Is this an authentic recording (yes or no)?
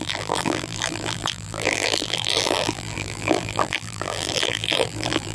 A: no